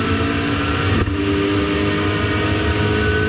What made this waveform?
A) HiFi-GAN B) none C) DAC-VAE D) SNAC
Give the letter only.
B